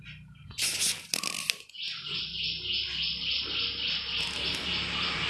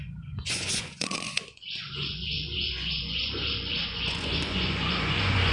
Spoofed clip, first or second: second